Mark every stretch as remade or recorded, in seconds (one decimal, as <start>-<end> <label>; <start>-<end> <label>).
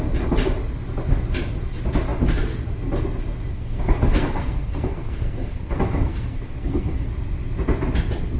0.0-3.5 recorded; 3.5-7.1 remade; 7.1-8.4 recorded